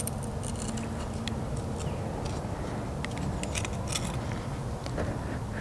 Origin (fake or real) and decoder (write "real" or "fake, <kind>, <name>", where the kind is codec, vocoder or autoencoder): real